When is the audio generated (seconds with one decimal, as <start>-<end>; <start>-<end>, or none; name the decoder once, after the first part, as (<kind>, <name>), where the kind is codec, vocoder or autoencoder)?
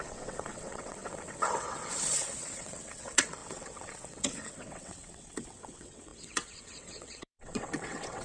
0.0-8.2 (vocoder, WaveNeXt)